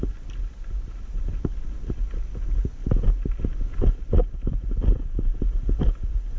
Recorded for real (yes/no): yes